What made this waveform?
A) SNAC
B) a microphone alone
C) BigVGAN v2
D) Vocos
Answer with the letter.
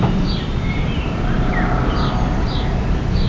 C